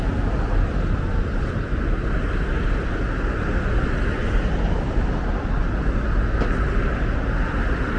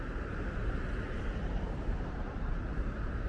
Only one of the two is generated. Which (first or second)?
second